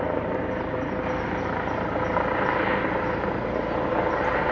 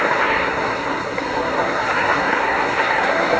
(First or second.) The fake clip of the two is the second